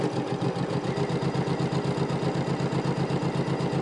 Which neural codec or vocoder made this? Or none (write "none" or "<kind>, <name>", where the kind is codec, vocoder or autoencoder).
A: none